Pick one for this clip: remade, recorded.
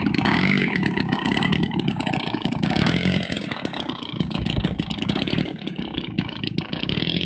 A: remade